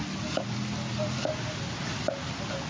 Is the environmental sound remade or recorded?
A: remade